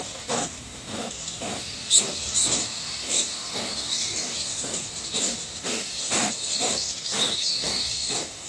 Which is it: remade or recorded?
remade